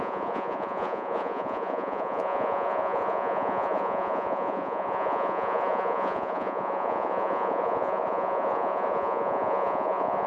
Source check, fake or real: fake